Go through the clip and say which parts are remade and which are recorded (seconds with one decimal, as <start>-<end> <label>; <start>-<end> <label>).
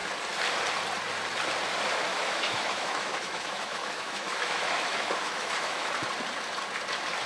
0.0-2.1 recorded; 2.1-5.9 remade; 5.9-7.3 recorded